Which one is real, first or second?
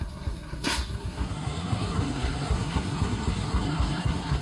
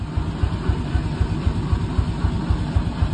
second